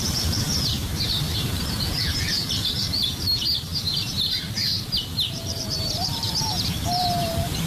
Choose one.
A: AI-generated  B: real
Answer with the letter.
A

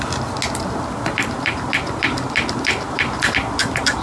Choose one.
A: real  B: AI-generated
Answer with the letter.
A